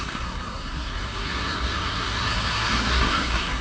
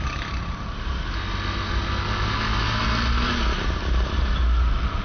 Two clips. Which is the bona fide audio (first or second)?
second